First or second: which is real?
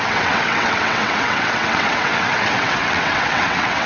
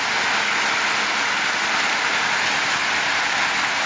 second